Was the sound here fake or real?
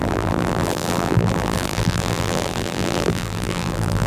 fake